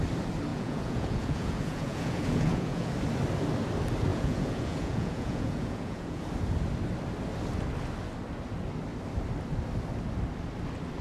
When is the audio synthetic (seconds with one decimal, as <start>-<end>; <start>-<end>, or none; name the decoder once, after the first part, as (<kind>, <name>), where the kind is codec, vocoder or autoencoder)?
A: 0.5-2.9 (vocoder, Vocos); 4.1-6.2